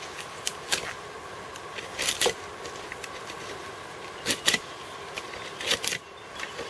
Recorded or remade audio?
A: recorded